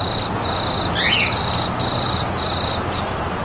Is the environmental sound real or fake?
real